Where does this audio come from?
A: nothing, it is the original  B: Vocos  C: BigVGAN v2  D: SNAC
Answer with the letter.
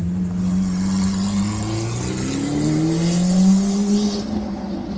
A